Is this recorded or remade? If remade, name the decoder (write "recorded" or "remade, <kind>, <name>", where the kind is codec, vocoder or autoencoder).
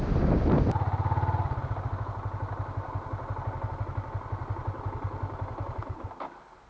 recorded